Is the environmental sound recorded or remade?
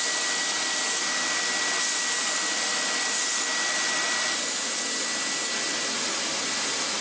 recorded